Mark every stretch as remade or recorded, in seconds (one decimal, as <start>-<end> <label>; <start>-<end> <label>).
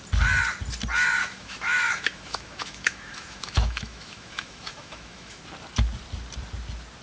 0.0-1.2 recorded; 1.2-5.4 remade; 5.4-7.0 recorded